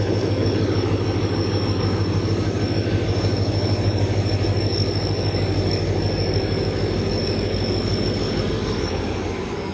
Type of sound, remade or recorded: remade